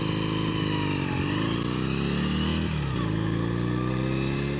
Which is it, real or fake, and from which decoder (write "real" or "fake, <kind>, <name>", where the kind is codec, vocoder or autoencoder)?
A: real